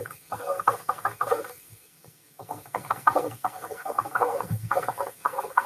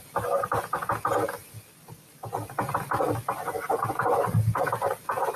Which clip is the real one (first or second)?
second